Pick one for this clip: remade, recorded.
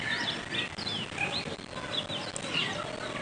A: recorded